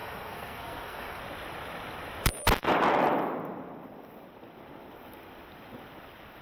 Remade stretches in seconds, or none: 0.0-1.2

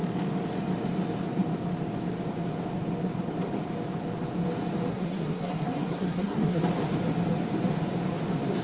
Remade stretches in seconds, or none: 4.9-6.6